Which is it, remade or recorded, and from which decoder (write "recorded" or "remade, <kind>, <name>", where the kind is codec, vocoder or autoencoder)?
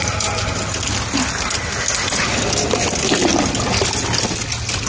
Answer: recorded